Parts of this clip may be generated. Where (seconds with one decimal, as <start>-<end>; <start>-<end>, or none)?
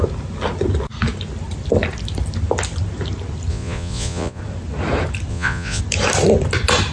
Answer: 3.5-4.4; 5.3-5.8